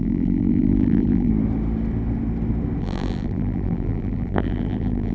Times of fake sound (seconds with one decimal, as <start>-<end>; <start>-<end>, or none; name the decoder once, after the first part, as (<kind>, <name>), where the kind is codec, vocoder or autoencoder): 0.0-1.3 (vocoder, BigVGAN v2); 2.8-5.1